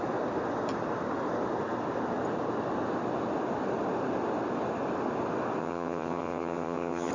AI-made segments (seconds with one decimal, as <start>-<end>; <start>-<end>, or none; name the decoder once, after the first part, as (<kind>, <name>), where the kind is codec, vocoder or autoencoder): 5.6-7.1 (vocoder, HiFi-GAN)